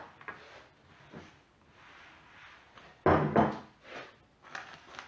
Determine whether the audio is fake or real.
real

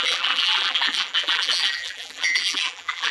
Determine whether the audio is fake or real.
fake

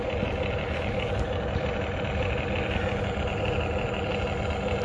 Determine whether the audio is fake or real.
real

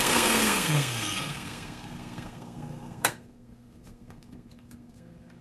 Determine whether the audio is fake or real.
fake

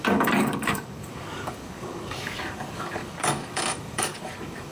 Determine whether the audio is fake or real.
fake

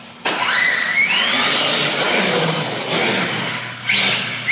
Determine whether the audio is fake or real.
real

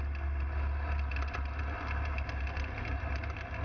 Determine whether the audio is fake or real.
real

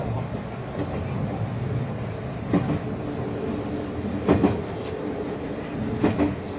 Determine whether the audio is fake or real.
real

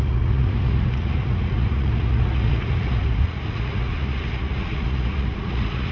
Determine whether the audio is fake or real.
fake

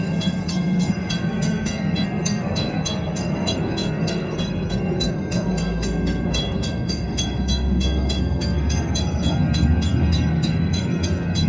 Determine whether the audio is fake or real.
fake